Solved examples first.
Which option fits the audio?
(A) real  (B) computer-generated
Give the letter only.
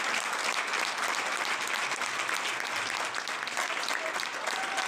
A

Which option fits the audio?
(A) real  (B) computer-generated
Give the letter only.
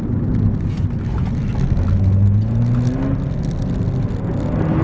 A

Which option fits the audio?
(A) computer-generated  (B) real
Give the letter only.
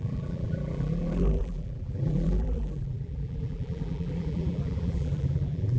A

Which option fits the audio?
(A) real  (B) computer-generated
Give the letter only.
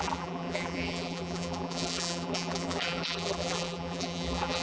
B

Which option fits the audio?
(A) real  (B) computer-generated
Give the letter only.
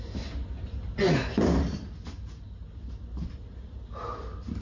A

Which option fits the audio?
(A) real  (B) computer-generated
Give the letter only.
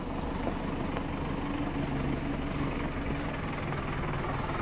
A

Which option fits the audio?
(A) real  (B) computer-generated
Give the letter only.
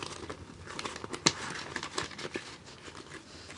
A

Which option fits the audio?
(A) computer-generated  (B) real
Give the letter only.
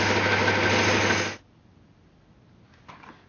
B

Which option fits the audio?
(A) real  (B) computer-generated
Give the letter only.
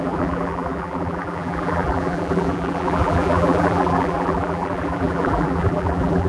B